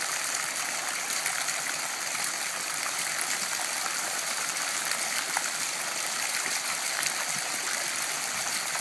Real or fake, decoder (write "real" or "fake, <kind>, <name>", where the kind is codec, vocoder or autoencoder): fake, vocoder, BigVGAN v2